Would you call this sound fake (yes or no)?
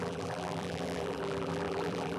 yes